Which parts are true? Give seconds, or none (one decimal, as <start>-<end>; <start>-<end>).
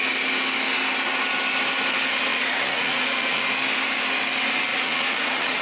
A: 0.0-2.3; 3.4-4.7